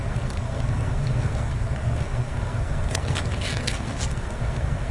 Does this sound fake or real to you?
fake